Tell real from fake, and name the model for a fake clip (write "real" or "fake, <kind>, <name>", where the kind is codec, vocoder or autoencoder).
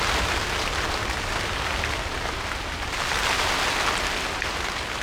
real